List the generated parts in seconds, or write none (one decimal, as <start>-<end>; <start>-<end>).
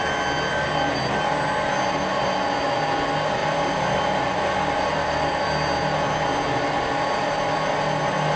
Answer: 3.4-4.4